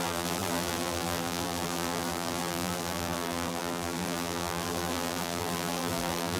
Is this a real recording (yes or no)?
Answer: no